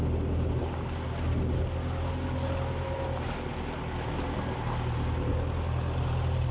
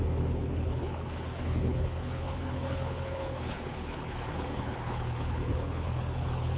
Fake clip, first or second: second